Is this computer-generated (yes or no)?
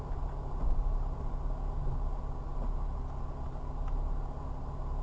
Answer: no